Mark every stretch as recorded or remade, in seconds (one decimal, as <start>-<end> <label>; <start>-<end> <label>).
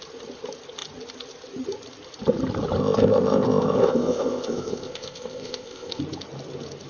0.0-2.8 recorded; 2.8-6.0 remade; 6.0-6.9 recorded